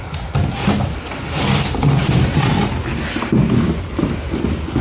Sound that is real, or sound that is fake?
real